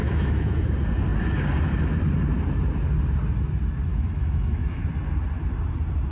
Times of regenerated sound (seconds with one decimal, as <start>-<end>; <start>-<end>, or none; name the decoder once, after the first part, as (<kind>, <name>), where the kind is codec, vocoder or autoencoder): 0.0-0.6 (autoencoder, DAC-VAE); 3.9-4.8